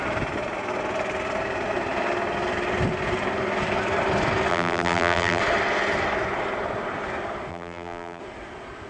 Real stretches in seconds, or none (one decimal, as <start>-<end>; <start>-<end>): 0.0-4.5; 5.4-7.5; 8.2-8.9